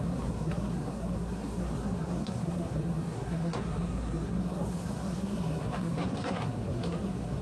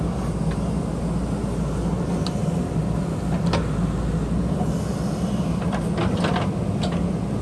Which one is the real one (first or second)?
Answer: second